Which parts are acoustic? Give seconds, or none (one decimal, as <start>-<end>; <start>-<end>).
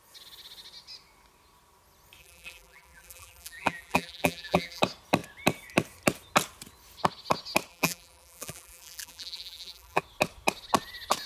0.0-2.2; 4.8-7.7; 10.0-11.3